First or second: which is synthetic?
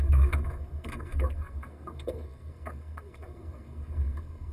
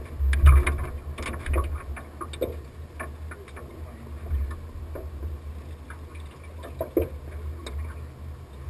first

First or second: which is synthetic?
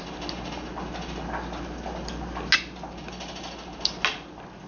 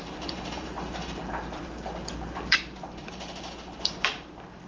second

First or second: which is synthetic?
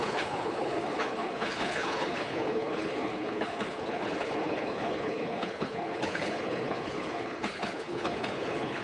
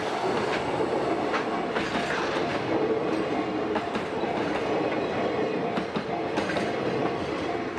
first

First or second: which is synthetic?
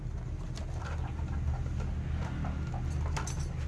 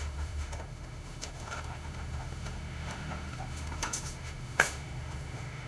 second